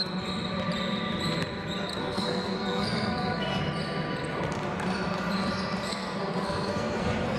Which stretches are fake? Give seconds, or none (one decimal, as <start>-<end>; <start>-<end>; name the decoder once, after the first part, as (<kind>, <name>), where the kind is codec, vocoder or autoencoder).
1.9-3.6 (codec, SNAC); 5.9-7.4